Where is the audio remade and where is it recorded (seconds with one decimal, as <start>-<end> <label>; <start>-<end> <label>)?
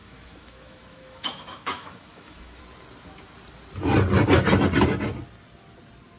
0.0-2.6 remade; 2.6-6.2 recorded